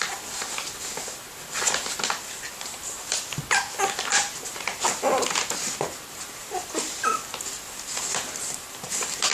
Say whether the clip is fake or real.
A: real